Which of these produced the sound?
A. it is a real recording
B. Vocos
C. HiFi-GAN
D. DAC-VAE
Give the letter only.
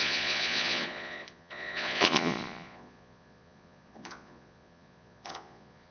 B